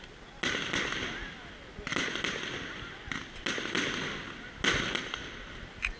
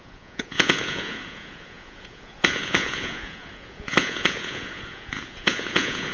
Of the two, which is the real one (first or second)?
first